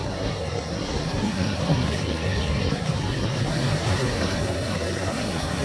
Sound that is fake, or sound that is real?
fake